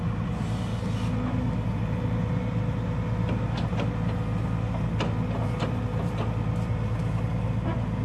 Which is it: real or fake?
real